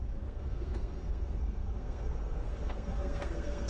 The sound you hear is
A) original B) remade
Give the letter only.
B